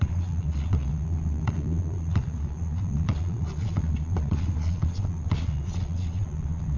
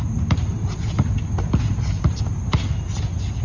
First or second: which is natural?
second